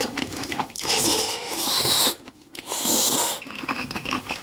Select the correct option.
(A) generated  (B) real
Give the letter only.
A